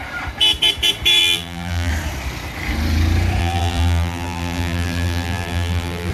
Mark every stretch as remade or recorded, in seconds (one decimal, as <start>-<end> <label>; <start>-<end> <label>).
0.0-1.2 recorded; 1.2-1.9 remade; 1.9-3.4 recorded; 3.4-6.1 remade